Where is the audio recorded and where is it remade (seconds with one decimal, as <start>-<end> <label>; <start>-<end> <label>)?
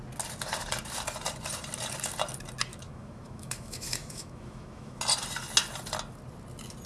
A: 0.0-2.7 recorded; 2.7-5.0 remade; 5.0-6.9 recorded